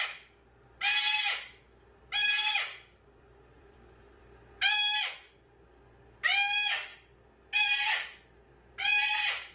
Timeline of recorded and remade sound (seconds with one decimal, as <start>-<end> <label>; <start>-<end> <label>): 0.0-2.2 recorded; 2.2-4.2 remade; 4.2-9.5 recorded